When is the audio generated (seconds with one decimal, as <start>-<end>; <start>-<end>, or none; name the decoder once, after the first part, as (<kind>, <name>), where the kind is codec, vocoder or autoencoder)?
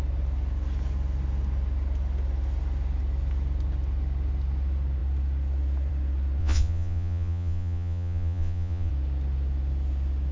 6.4-8.9 (vocoder, Vocos)